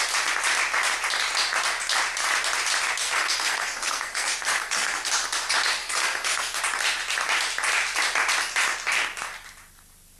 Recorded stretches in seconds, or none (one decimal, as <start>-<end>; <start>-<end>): 0.0-3.0; 5.1-5.8; 6.6-10.2